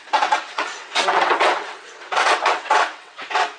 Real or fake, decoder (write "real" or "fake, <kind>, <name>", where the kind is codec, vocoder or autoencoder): fake, vocoder, WaveNeXt